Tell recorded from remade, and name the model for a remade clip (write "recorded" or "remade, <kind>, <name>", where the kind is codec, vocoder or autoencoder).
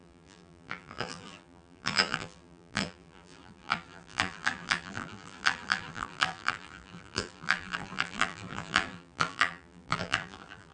remade, vocoder, BigVGAN v2